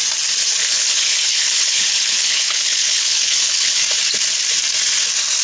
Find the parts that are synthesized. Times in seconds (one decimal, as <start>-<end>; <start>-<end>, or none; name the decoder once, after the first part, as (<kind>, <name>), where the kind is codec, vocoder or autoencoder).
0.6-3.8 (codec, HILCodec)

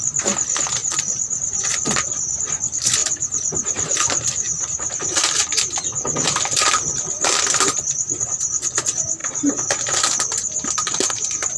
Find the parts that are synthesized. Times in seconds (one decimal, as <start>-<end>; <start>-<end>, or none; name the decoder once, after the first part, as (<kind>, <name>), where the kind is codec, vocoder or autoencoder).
0.8-2.4 (vocoder, BigVGAN v2); 3.0-7.4; 9.2-11.1

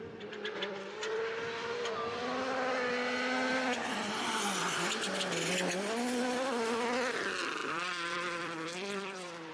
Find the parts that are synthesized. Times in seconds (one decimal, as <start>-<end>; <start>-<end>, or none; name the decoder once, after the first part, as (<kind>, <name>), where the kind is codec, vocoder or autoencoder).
7.6-9.5 (vocoder, BigVGAN v2)

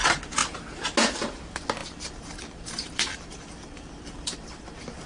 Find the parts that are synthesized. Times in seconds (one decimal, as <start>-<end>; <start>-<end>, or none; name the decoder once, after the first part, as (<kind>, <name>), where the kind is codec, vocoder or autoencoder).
1.8-5.1 (vocoder, BigVGAN v2)

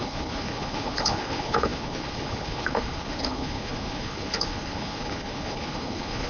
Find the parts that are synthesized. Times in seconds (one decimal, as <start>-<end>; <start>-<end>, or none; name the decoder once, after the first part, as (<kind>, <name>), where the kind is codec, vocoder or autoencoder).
0.0-6.3 (codec, HILCodec)

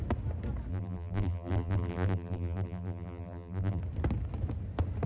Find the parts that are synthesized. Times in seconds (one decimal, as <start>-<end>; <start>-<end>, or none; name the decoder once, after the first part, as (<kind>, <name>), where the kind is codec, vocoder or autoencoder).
0.7-3.8 (vocoder, BigVGAN v2)